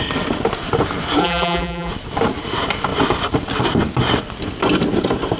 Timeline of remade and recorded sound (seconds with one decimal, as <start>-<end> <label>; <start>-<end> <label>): 0.0-1.2 recorded; 1.2-1.9 remade; 1.9-5.4 recorded